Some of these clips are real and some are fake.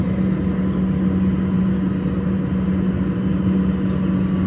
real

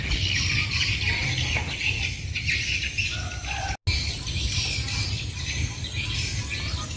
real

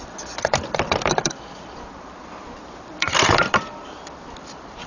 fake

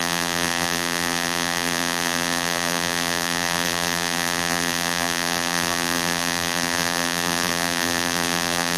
fake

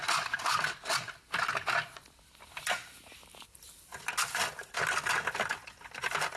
real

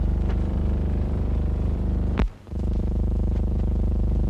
fake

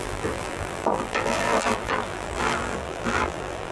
fake